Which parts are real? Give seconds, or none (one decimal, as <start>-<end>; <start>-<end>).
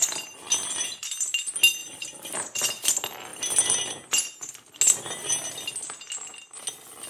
0.0-1.8; 2.6-7.1